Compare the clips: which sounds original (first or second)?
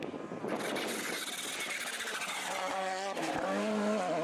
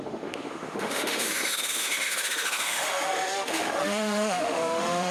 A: first